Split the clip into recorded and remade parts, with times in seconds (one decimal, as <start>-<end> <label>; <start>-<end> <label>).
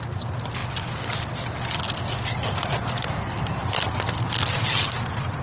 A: 0.0-5.4 recorded